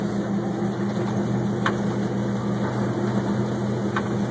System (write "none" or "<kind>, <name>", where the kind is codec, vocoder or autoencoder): none